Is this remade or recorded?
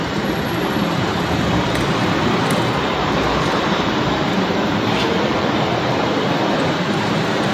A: remade